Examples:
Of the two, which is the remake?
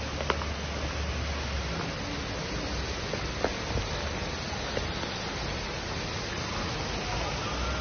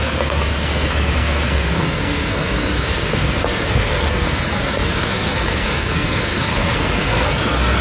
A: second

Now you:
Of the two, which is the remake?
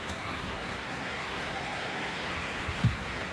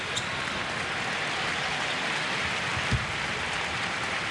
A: first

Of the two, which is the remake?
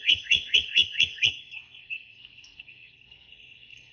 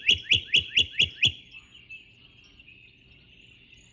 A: first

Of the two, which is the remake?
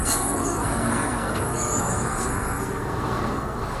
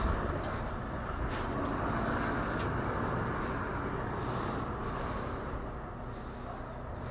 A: first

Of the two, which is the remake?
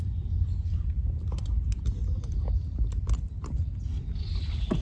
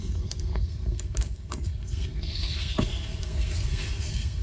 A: second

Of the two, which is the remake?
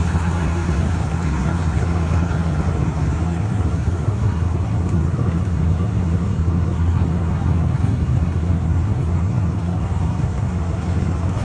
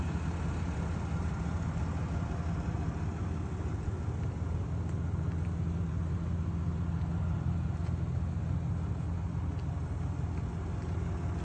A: first